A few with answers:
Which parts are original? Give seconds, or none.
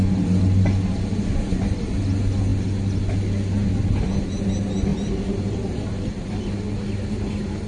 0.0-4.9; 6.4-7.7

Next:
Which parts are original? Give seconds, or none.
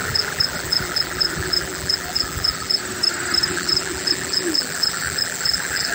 2.8-3.5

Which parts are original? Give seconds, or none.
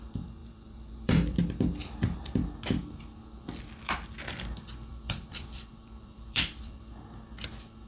0.0-0.4; 1.4-4.9; 6.8-7.9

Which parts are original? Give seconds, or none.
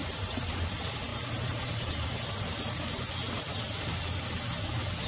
0.7-1.1; 2.6-5.1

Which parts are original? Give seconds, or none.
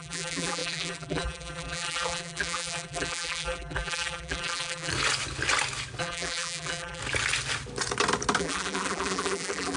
4.9-6.0; 7.0-8.4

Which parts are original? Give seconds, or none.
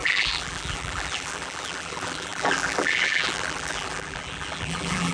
none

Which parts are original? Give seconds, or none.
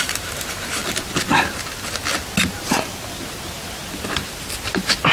0.8-3.9